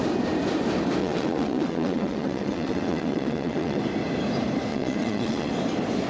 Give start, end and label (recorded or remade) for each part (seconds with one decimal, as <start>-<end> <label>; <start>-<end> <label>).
0.0-1.0 recorded; 1.0-3.8 remade; 3.8-4.7 recorded; 4.7-5.5 remade; 5.5-6.1 recorded